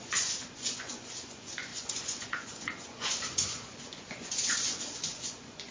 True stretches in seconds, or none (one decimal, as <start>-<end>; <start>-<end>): none